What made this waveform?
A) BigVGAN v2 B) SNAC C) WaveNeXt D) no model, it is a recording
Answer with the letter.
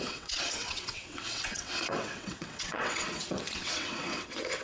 C